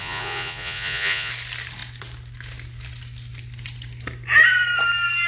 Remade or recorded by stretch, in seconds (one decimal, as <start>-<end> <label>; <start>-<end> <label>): 0.0-1.3 remade; 1.3-5.3 recorded